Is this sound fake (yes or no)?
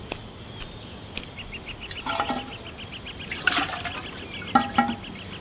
no